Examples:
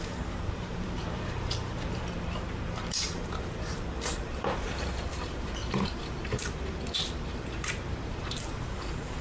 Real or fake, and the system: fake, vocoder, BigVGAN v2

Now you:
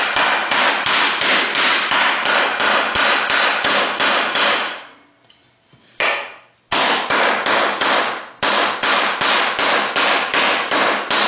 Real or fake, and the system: real